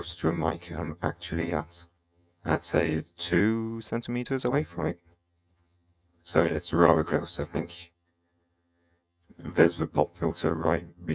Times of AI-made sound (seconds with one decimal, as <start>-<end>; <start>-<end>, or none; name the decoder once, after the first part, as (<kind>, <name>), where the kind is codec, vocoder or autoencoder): 0.0-3.4 (vocoder, HiFi-GAN); 4.5-11.1